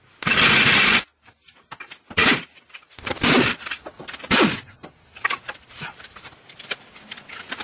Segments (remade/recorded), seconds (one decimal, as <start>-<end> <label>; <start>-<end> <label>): 0.0-2.2 recorded; 2.2-5.9 remade; 5.9-7.6 recorded